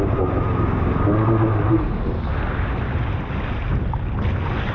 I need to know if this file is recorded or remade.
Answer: recorded